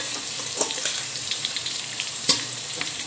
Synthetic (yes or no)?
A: yes